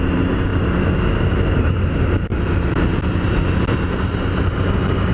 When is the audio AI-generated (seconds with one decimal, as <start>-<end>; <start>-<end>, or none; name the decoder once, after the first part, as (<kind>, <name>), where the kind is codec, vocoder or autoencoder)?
0.0-0.5 (vocoder, BigVGAN v2); 1.5-2.3; 3.7-5.1